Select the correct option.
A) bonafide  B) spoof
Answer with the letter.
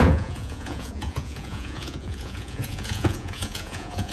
B